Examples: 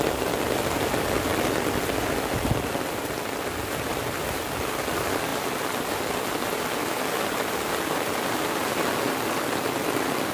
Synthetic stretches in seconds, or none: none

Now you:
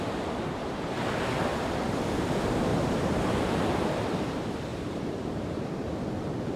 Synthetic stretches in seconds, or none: 2.7-3.2 (vocoder, BigVGAN v2); 4.7-5.6

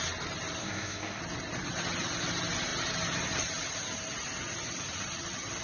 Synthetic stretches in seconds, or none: 0.6-1.2 (codec, SNAC)

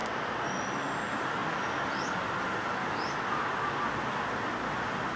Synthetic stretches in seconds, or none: none

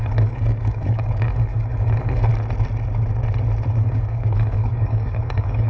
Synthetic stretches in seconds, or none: 0.0-2.3 (codec, DAC); 3.7-5.7

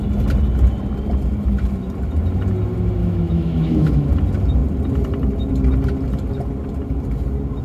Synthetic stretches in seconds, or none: 3.0-4.1 (autoencoder, DAC-VAE)